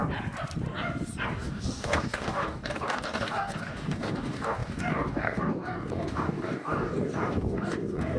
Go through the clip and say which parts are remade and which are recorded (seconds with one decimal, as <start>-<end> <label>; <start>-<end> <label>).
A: 0.0-1.2 recorded; 1.2-8.2 remade